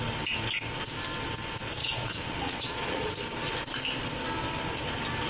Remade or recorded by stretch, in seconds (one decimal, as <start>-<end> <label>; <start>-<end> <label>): 0.0-1.8 recorded; 1.8-3.1 remade; 3.1-5.3 recorded